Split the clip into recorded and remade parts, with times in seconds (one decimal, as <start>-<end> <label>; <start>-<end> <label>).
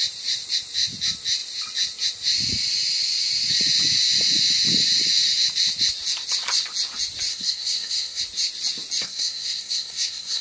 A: 0.0-7.3 recorded; 7.3-8.2 remade; 8.2-9.0 recorded; 9.0-10.4 remade